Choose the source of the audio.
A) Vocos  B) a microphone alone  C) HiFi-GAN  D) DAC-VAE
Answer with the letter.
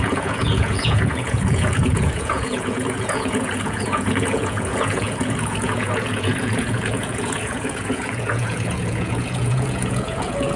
A